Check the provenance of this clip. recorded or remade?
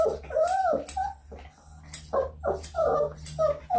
recorded